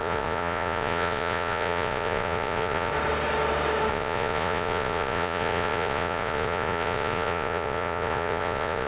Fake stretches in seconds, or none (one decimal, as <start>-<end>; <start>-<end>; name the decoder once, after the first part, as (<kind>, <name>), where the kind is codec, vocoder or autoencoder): 0.0-2.9 (vocoder, Vocos); 3.9-8.9